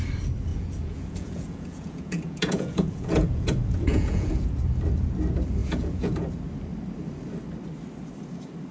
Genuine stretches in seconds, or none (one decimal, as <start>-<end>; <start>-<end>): 0.0-0.5; 4.6-5.6; 6.3-8.7